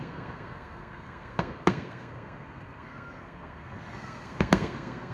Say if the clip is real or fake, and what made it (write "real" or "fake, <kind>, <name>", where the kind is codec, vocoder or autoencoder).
fake, codec, SNAC